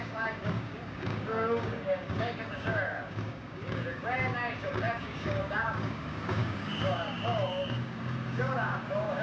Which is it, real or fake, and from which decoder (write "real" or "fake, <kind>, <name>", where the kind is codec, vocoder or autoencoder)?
fake, codec, DAC